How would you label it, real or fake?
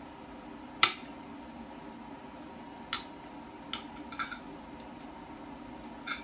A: real